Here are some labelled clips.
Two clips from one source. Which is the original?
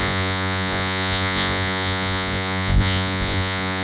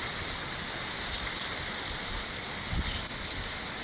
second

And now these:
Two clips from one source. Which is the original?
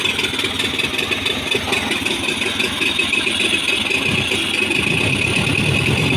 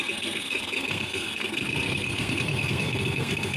first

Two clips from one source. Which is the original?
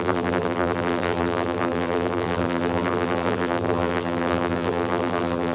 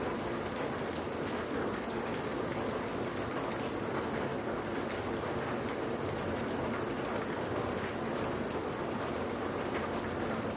second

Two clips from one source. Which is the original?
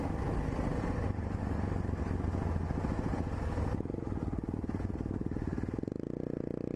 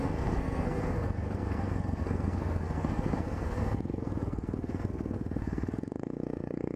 first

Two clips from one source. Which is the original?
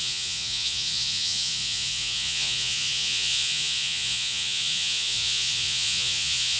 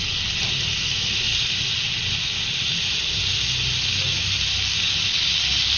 second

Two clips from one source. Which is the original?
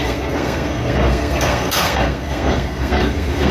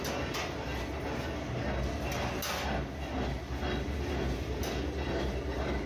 second